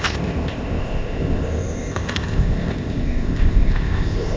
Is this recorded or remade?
remade